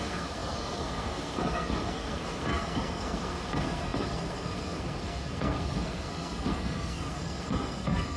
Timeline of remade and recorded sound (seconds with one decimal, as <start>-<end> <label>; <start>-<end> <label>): 0.0-8.2 remade